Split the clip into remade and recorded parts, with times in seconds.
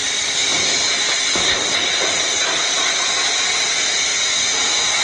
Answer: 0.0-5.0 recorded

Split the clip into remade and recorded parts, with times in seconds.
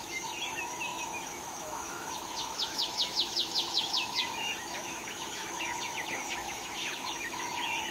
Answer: 0.0-7.9 remade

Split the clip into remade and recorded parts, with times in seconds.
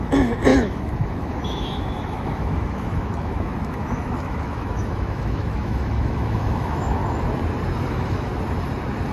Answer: 0.0-7.0 remade; 7.0-7.9 recorded; 7.9-8.3 remade; 8.3-9.1 recorded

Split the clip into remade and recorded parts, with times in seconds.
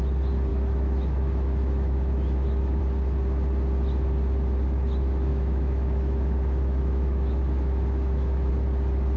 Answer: 0.0-0.5 recorded; 0.5-2.8 remade; 2.8-5.3 recorded; 5.3-8.5 remade; 8.5-9.2 recorded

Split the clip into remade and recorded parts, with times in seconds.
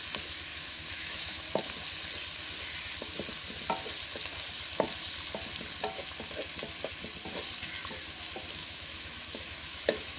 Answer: 0.0-0.5 recorded; 0.5-1.6 remade; 1.6-8.6 recorded; 8.6-10.2 remade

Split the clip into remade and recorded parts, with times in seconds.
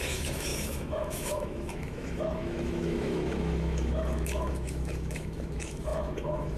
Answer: 0.0-6.6 remade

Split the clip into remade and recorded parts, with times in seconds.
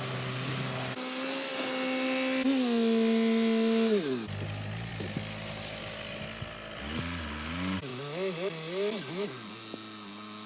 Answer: 0.0-10.5 recorded